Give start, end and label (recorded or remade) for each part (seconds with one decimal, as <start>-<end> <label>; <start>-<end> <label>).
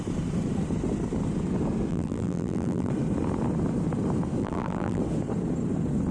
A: 0.0-1.9 recorded; 1.9-2.9 remade; 2.9-4.4 recorded; 4.4-5.0 remade; 5.0-6.1 recorded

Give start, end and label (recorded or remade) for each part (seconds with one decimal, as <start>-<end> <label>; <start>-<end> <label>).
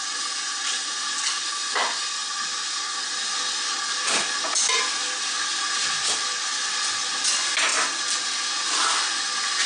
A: 0.0-9.7 recorded